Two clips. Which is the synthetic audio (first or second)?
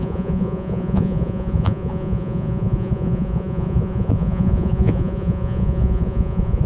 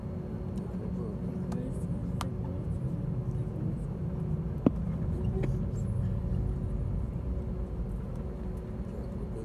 first